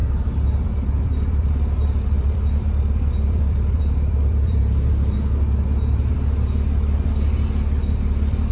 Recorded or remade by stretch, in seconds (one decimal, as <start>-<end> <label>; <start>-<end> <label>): 0.0-4.9 remade; 4.9-8.5 recorded